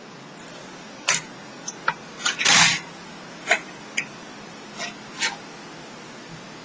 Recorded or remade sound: recorded